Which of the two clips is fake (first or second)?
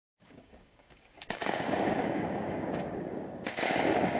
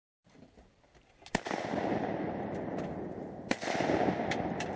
first